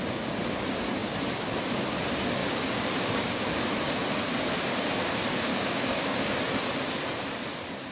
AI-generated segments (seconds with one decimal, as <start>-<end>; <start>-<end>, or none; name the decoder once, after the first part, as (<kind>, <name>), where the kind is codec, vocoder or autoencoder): 2.4-3.4 (codec, DAC); 5.5-6.4